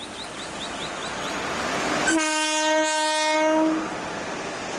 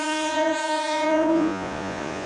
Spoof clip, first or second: second